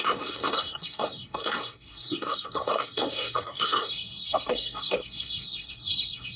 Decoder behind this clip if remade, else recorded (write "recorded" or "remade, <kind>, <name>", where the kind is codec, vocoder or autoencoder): remade, codec, SNAC